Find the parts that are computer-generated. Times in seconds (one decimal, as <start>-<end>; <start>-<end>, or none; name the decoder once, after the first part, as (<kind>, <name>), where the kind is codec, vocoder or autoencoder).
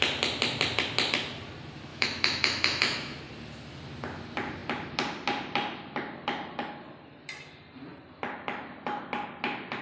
1.9-3.2 (autoencoder, DAC-VAE)